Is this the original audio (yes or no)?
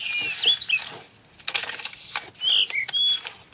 yes